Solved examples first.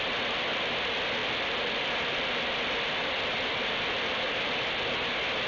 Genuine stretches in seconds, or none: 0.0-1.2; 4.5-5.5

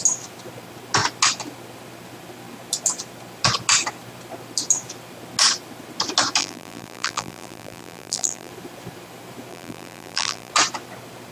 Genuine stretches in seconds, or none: 0.0-6.4; 8.5-9.5; 10.5-11.3